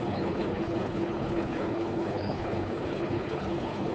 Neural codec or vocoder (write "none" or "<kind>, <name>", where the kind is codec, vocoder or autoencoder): codec, HILCodec